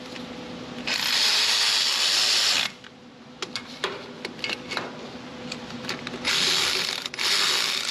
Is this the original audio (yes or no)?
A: yes